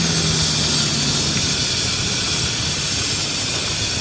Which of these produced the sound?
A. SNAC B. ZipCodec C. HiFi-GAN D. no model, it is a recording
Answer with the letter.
D